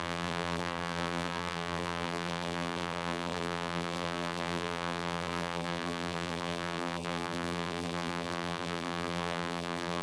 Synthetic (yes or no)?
yes